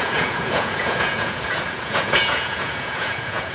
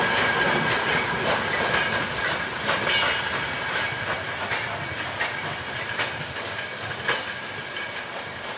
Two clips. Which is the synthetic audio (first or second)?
first